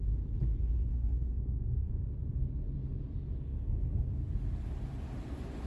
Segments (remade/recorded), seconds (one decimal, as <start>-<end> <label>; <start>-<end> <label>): 0.0-0.9 recorded; 0.9-1.9 remade; 1.9-3.5 recorded; 3.5-4.1 remade; 4.1-5.7 recorded